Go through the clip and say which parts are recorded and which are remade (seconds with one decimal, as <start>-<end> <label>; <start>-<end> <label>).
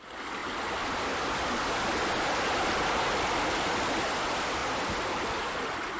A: 0.0-6.0 recorded